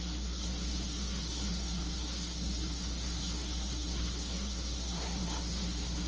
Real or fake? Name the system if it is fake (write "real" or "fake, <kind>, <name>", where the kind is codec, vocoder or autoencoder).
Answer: fake, codec, SNAC